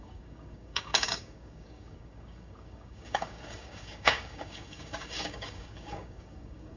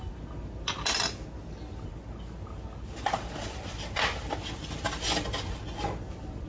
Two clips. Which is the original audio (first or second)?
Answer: second